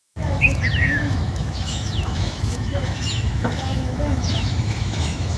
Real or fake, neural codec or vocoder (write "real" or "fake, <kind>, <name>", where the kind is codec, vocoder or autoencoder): fake, autoencoder, DAC-VAE